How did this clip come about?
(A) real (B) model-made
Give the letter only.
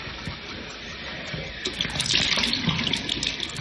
A